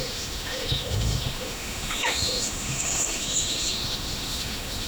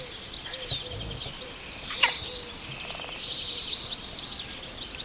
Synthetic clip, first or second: first